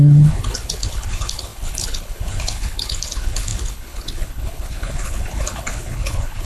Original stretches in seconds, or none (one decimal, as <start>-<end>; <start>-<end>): none